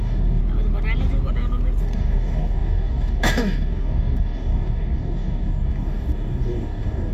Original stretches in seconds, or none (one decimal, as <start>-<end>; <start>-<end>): 0.4-1.8